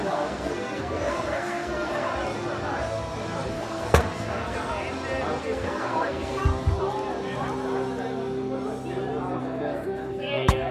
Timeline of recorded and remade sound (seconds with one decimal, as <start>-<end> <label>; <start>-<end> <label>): 0.0-2.1 remade; 2.1-3.5 recorded; 3.5-4.7 remade; 4.7-5.4 recorded; 5.4-6.4 remade; 6.4-9.4 recorded; 9.4-10.7 remade